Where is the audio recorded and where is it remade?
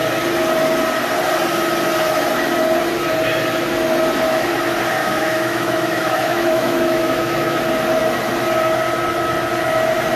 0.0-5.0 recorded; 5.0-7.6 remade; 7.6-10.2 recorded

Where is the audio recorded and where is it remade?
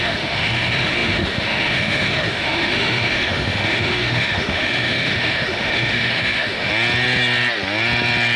0.0-6.7 remade; 6.7-8.4 recorded